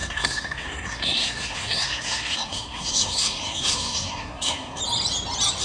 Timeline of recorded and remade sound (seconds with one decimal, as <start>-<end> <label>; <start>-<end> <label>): 0.0-4.8 remade; 4.8-5.6 recorded